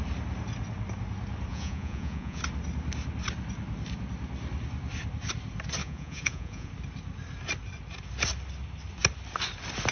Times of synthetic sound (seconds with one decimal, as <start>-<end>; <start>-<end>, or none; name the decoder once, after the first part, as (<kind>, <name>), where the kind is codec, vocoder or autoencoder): 1.5-2.4 (vocoder, Vocos); 5.8-6.7